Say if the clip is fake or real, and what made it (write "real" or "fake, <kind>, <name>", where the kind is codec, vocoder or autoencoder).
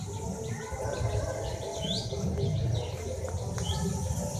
real